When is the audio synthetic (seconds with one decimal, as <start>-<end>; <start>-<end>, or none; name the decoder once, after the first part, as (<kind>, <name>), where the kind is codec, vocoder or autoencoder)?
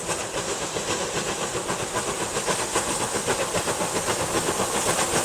none